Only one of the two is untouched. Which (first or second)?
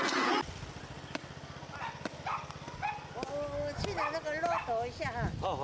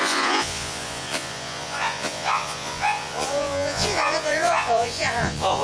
first